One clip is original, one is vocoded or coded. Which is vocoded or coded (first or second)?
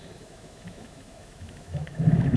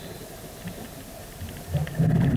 first